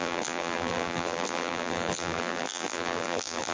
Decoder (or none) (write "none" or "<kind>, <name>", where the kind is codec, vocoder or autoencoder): vocoder, BigVGAN v2